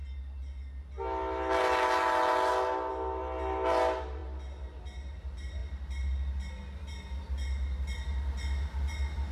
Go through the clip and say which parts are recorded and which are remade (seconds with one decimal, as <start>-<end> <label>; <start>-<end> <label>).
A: 0.0-9.3 recorded

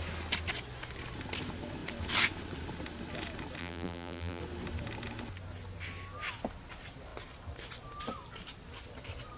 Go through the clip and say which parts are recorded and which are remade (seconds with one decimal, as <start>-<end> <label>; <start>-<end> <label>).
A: 0.0-3.6 recorded; 3.6-4.4 remade; 4.4-9.4 recorded

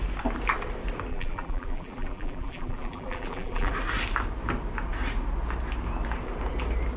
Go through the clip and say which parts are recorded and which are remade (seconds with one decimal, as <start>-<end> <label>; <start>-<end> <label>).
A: 0.0-1.1 recorded; 1.1-3.7 remade; 3.7-7.0 recorded

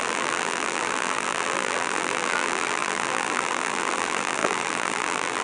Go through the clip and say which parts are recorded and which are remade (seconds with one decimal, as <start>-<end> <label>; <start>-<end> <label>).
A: 0.0-5.4 remade

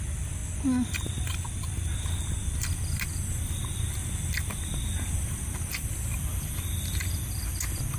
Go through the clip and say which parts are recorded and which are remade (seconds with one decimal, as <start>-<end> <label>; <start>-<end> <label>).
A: 0.0-8.0 recorded

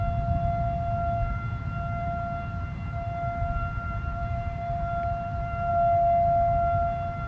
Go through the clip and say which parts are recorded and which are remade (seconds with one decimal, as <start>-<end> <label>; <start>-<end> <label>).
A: 0.0-1.3 recorded; 1.3-5.7 remade; 5.7-7.3 recorded

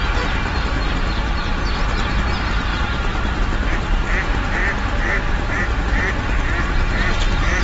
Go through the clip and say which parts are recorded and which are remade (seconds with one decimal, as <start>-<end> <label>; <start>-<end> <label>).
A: 0.0-2.7 recorded; 2.7-3.4 remade; 3.4-4.6 recorded; 4.6-5.8 remade; 5.8-7.6 recorded